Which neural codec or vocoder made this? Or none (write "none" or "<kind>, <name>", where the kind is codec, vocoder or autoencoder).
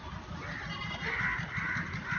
none